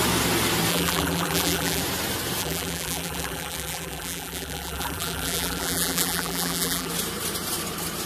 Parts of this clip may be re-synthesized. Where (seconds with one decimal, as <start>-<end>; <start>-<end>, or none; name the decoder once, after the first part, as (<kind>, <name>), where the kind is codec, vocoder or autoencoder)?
0.7-1.8 (vocoder, BigVGAN v2); 2.4-6.9